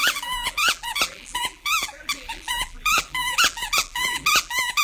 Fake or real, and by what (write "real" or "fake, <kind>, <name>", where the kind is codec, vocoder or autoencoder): fake, vocoder, BigVGAN v2